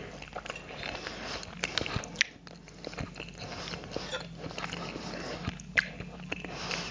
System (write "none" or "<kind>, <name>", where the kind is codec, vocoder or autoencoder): none